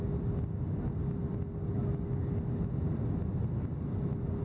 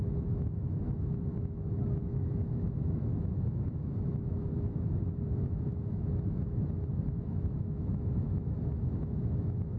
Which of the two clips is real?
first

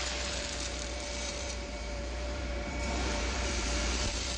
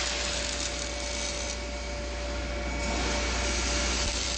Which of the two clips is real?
second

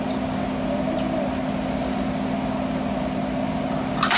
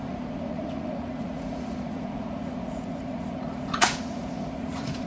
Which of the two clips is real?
first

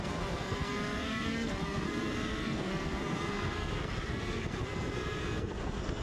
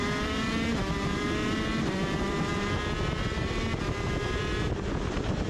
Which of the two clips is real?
second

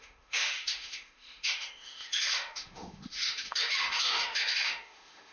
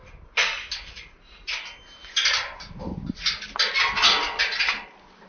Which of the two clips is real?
second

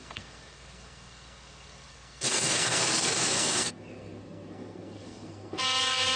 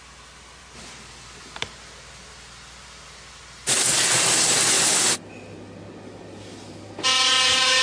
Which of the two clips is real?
second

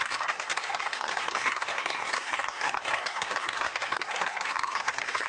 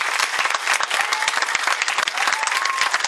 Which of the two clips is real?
second